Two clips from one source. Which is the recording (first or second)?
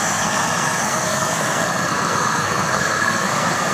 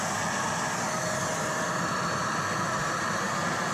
second